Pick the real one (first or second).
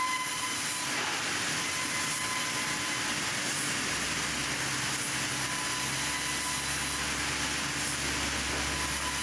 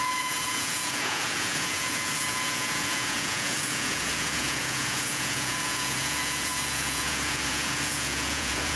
first